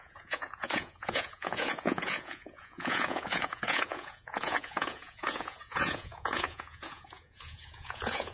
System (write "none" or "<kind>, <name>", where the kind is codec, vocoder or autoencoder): vocoder, Vocos